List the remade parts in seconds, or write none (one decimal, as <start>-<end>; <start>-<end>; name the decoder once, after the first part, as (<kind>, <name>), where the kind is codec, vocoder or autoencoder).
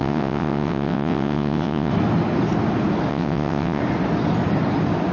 0.0-1.9 (vocoder, WaveNeXt); 3.1-3.8